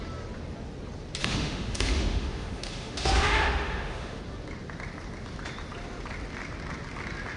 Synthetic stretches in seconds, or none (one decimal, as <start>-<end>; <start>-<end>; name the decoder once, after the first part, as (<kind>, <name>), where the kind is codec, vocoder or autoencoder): 1.2-4.2 (autoencoder, DAC-VAE)